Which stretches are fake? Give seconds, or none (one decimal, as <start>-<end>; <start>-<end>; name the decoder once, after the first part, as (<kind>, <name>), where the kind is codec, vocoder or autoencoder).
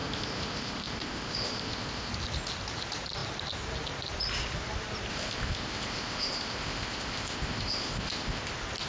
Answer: 0.0-2.1 (codec, ZipCodec); 5.1-8.4